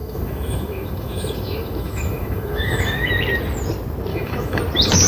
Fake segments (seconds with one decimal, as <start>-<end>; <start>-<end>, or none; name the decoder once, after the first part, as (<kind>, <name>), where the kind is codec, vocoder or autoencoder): 0.0-3.1 (autoencoder, DAC-VAE); 4.1-4.6